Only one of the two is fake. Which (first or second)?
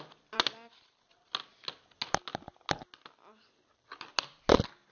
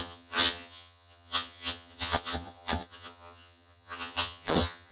second